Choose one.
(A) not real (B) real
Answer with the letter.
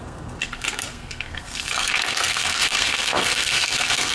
A